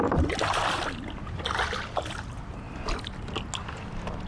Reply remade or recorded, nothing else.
recorded